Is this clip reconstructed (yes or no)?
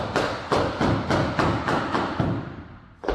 no